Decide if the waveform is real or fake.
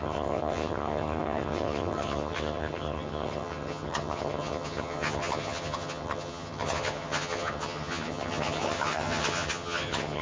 fake